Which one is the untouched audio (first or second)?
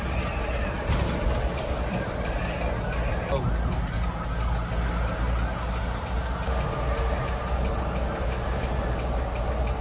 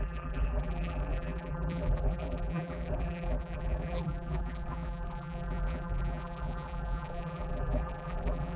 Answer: first